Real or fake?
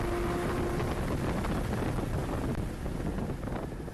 real